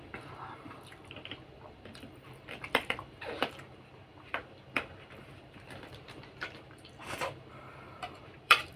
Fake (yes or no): yes